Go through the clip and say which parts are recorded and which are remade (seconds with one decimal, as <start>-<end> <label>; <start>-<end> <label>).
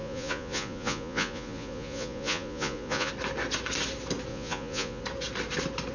0.0-3.1 remade; 3.1-4.3 recorded; 4.3-5.0 remade; 5.0-5.9 recorded